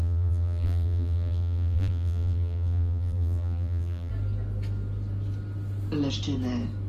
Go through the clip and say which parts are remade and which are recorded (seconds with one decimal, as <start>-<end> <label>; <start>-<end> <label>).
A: 0.0-4.1 remade; 4.1-6.9 recorded